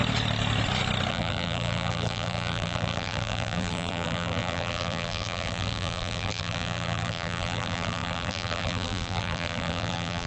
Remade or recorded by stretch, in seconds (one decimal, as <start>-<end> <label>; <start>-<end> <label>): 0.0-1.1 recorded; 1.1-10.3 remade